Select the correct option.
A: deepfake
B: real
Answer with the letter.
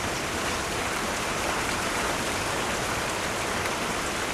A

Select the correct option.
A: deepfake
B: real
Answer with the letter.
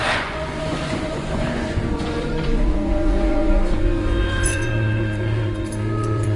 A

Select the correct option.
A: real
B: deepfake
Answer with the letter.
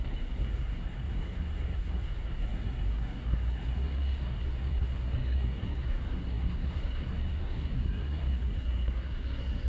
B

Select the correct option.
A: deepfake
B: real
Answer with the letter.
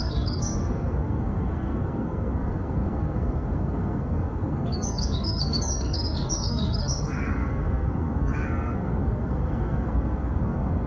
A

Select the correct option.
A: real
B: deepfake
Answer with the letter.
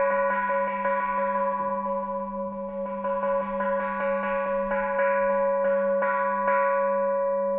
A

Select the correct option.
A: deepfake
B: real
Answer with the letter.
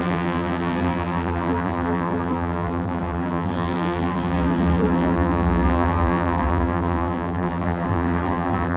A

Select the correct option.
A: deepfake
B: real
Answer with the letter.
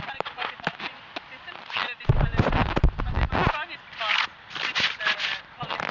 B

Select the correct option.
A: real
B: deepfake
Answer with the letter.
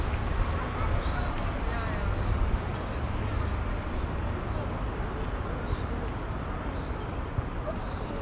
A